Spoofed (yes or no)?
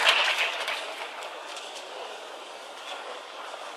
yes